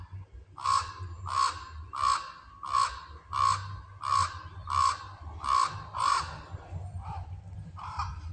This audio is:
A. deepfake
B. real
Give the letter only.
B